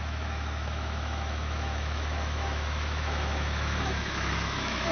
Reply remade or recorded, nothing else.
remade